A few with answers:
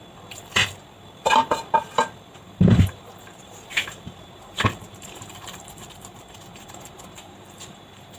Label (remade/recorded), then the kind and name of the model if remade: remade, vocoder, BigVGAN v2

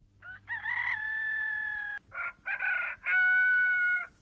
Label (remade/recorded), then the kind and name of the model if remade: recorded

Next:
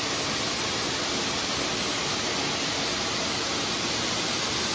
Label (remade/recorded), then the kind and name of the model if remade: recorded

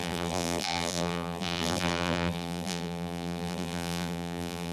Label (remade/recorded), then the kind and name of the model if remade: remade, vocoder, BigVGAN v2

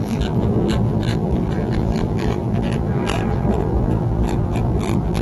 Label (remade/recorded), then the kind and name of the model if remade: remade, vocoder, BigVGAN v2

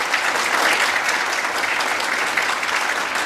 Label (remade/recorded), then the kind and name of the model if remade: recorded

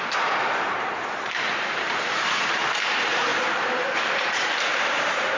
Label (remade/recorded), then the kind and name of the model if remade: remade, vocoder, BigVGAN v2